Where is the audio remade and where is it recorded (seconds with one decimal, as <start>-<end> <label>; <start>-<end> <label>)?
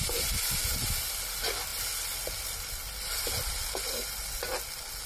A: 0.0-1.7 recorded; 1.7-4.4 remade; 4.4-5.1 recorded